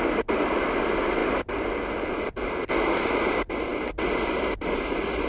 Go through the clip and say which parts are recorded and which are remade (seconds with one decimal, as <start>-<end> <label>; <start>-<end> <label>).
0.0-5.3 recorded